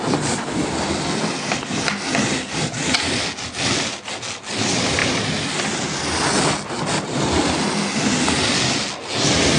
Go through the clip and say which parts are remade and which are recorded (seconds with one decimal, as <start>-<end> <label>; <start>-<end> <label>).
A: 0.0-9.6 recorded

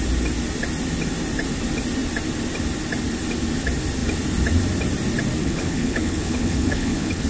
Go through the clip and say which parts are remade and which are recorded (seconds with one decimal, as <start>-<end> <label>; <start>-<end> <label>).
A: 0.0-5.4 recorded; 5.4-7.3 remade

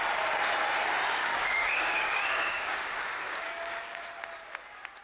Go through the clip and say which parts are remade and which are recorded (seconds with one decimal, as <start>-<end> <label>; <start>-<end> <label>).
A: 0.0-1.2 recorded; 1.2-4.0 remade; 4.0-5.0 recorded

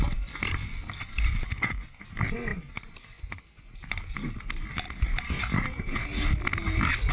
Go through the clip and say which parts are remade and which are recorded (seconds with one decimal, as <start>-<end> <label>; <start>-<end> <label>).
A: 0.0-7.1 recorded

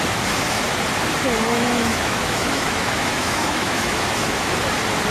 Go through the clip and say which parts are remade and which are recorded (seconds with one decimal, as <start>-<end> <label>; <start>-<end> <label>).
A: 0.0-1.5 recorded; 1.5-4.6 remade; 4.6-5.1 recorded

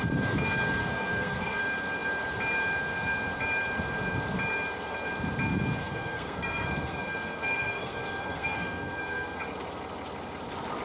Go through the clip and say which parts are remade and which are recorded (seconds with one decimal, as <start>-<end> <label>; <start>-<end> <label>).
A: 0.0-0.8 recorded; 0.8-1.6 remade; 1.6-5.8 recorded; 5.8-9.4 remade; 9.4-10.8 recorded